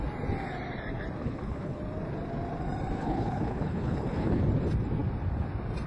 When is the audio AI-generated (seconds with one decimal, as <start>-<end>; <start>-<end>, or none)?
1.2-1.8; 3.0-4.4